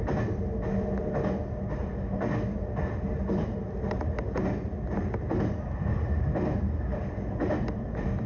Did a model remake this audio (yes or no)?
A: no